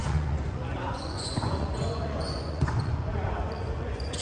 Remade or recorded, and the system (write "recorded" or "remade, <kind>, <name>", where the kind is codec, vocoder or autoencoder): remade, vocoder, Vocos